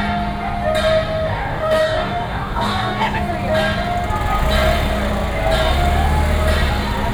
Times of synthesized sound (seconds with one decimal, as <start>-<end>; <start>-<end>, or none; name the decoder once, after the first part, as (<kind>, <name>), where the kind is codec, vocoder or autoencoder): 1.3-3.3 (codec, DAC)